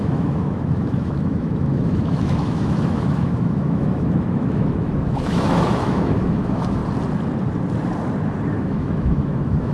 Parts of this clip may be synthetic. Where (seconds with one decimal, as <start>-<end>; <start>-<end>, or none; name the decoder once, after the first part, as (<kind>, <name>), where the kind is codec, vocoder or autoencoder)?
0.0-6.8 (autoencoder, DAC-VAE); 8.5-9.7